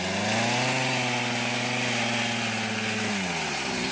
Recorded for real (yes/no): yes